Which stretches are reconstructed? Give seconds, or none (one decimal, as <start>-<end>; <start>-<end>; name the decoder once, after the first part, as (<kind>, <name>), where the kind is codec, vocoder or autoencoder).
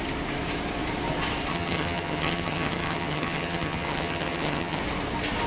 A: 1.5-4.8 (vocoder, HiFi-GAN)